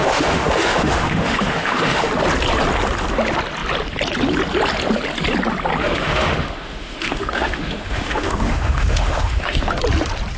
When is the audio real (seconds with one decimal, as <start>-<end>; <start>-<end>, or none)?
2.1-5.8; 9.8-10.4